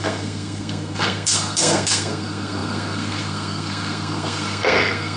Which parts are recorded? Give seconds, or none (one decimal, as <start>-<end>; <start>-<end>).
none